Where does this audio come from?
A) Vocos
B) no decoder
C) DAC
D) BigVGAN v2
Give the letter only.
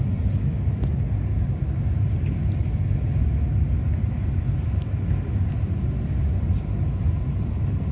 B